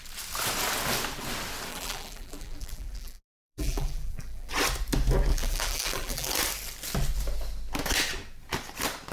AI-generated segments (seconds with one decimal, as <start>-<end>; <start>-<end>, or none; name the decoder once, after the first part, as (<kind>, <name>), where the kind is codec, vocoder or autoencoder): 1.7-4.5 (vocoder, BigVGAN v2); 5.3-6.3